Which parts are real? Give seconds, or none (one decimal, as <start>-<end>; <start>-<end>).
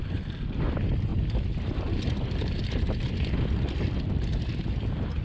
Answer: 0.0-1.1; 1.6-5.2